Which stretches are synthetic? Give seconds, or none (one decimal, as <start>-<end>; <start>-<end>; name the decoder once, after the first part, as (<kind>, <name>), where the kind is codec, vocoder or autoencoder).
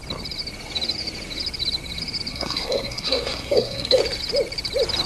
2.3-4.0 (codec, SNAC)